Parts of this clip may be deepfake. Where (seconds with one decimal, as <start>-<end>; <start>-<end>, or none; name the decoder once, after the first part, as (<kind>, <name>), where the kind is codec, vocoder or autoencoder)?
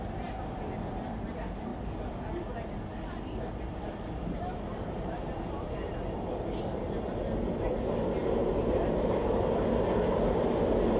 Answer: 4.2-5.9 (vocoder, BigVGAN v2); 8.4-9.7